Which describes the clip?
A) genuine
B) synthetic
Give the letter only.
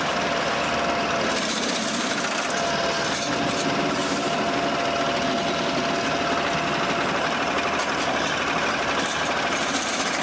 A